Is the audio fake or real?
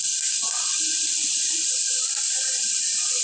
real